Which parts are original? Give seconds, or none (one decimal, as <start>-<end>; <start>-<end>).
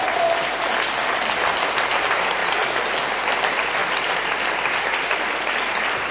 0.0-2.4; 3.3-3.8